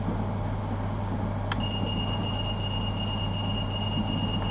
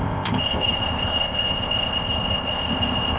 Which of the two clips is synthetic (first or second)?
second